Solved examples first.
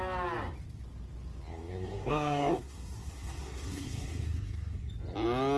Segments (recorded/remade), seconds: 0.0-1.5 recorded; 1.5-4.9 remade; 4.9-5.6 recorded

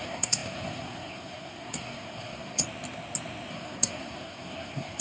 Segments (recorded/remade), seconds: 0.0-2.6 remade; 2.6-3.5 recorded; 3.5-5.0 remade

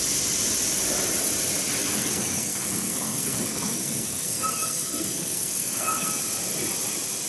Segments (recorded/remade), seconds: 0.0-1.8 recorded; 1.8-6.2 remade; 6.2-7.3 recorded